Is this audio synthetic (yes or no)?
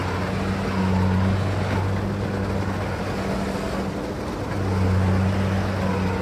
no